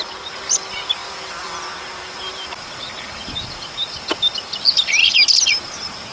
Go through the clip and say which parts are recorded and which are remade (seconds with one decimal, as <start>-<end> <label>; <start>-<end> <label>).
0.0-6.1 recorded